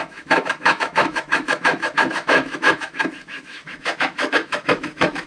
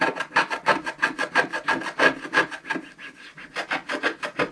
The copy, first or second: first